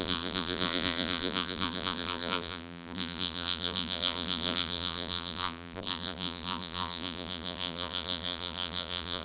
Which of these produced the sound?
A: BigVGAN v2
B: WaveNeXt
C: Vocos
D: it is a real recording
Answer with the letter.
A